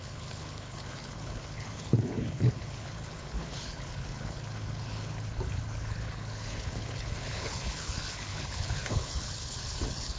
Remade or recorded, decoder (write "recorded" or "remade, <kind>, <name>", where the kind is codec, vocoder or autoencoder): remade, codec, HILCodec